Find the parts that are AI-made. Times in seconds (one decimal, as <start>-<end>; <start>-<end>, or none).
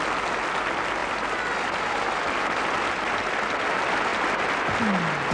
none